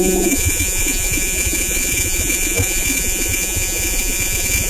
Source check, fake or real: fake